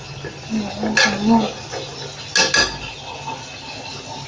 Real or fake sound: real